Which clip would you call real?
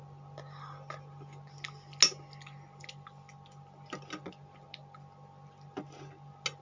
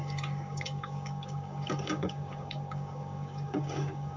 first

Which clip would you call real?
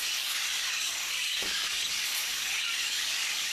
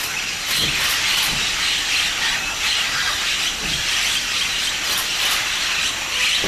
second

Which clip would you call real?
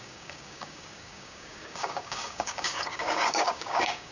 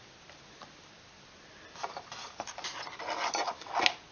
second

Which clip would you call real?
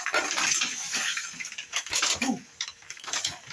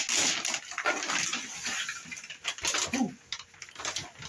second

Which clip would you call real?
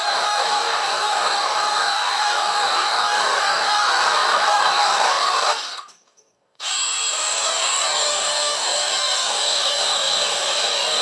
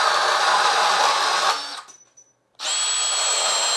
second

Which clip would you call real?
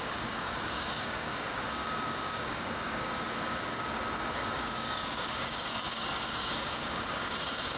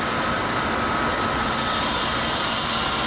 second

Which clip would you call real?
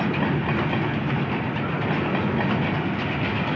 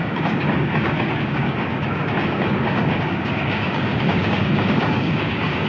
first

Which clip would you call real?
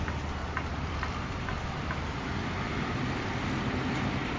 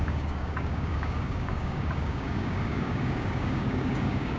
first